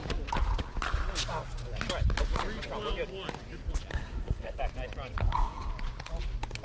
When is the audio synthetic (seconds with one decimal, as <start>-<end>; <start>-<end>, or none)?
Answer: 3.9-4.6; 5.2-5.7